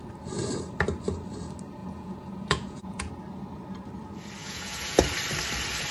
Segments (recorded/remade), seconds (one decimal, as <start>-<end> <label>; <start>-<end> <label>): 0.0-1.8 recorded; 1.8-3.1 remade; 3.1-4.4 recorded; 4.4-5.0 remade; 5.0-5.9 recorded